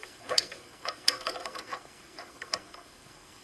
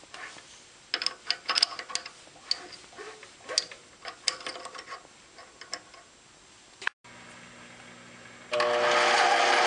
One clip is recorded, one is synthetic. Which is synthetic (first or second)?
first